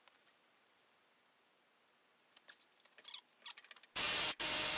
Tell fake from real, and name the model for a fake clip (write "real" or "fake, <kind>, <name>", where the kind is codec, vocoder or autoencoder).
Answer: real